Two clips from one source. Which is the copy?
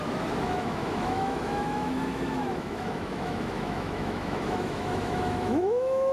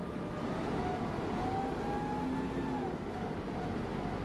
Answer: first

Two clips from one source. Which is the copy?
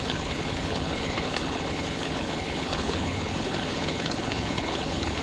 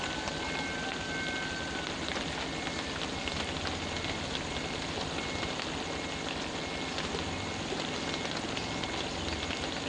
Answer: first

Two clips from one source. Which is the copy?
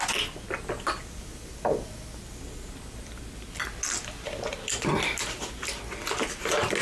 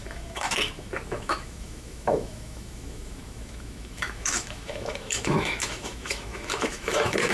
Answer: second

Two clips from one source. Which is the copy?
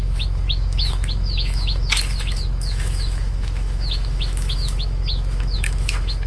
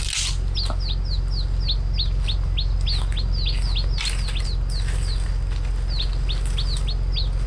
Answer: first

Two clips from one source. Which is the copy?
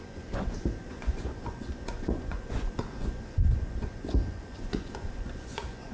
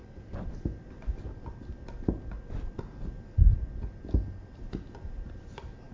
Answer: first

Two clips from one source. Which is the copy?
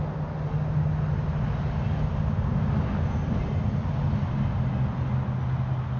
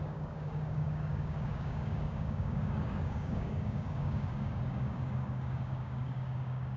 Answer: second